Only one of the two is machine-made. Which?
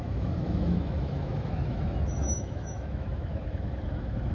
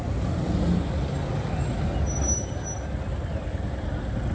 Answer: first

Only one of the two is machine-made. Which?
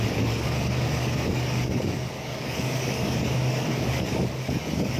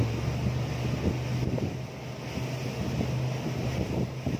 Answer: first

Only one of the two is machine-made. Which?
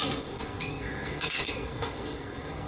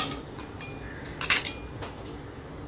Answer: first